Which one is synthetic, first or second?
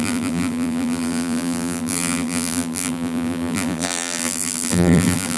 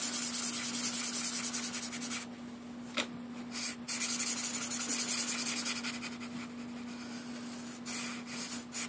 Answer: first